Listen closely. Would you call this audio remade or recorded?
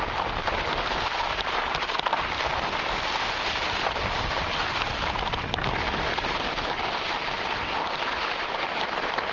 recorded